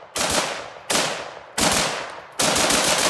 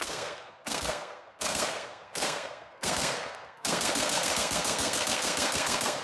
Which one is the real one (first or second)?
first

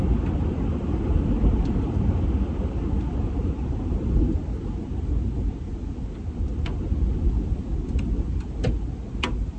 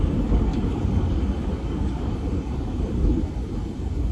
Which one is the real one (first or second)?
first